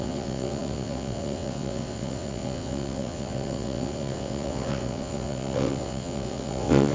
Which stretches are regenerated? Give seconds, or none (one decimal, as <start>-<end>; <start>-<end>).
0.0-6.9

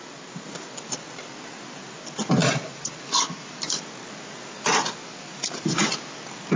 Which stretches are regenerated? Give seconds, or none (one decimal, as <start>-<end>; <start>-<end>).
2.4-3.8; 5.1-5.9

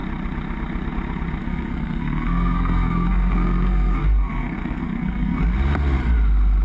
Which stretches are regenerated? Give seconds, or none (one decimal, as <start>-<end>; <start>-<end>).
1.4-5.4

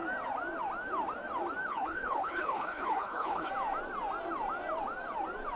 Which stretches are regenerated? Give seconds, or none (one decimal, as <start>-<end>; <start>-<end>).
1.7-3.5

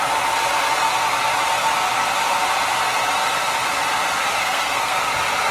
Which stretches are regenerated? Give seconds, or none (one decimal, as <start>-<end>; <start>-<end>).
4.4-5.0